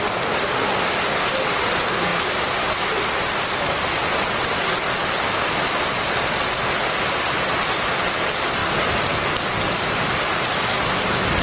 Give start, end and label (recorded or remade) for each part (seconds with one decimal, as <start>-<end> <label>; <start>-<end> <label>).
0.0-11.4 recorded